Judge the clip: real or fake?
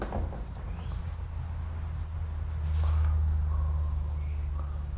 real